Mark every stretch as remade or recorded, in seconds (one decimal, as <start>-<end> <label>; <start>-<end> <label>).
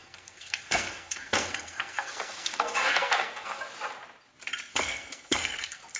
0.0-3.6 remade; 3.6-4.7 recorded; 4.7-6.0 remade